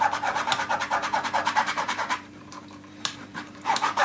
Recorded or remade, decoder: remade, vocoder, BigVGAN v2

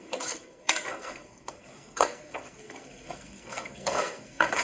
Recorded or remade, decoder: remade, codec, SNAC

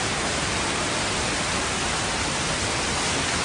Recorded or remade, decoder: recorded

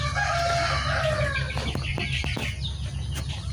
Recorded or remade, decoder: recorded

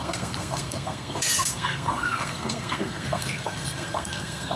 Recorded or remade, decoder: remade, codec, SNAC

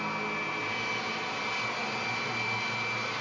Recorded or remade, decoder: recorded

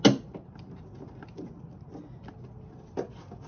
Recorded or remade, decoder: recorded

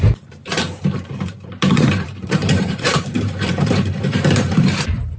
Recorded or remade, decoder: remade, vocoder, BigVGAN v2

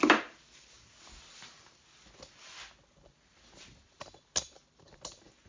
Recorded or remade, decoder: recorded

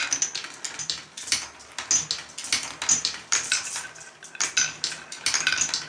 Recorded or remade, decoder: recorded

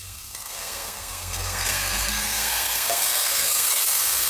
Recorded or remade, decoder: remade, codec, SNAC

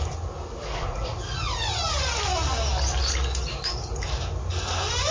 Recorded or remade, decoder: recorded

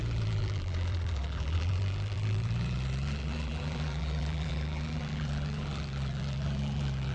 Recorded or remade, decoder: remade, vocoder, BigVGAN v2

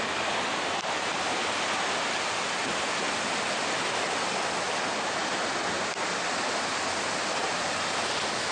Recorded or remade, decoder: recorded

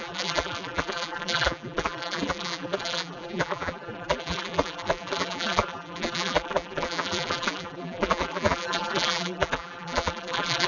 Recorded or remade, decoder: remade, vocoder, BigVGAN v2